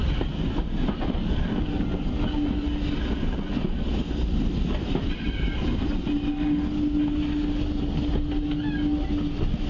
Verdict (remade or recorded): recorded